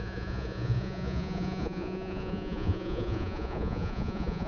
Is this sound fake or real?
fake